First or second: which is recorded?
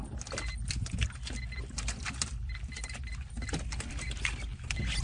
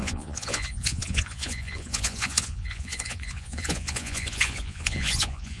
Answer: first